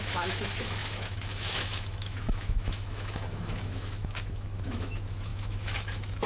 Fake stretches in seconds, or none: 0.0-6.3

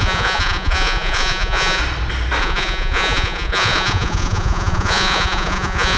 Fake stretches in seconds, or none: 0.0-1.8; 2.4-6.0

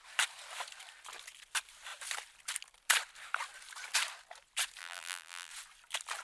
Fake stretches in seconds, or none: 4.8-5.5

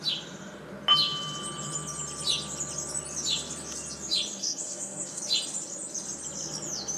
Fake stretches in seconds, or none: 4.4-5.2

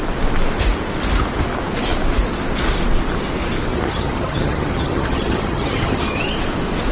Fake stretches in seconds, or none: 3.7-6.2